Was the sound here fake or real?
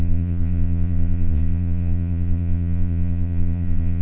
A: fake